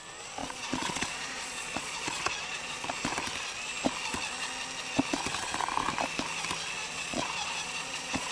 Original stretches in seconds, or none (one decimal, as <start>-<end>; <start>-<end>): 0.0-0.4; 2.9-6.8